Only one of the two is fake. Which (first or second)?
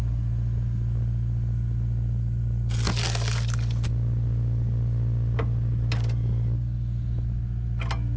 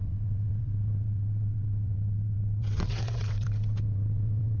second